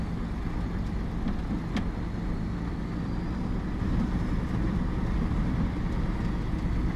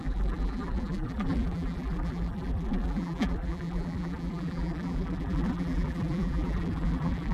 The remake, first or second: second